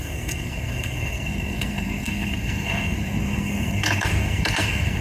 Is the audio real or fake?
fake